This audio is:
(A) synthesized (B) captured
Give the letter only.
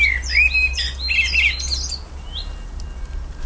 B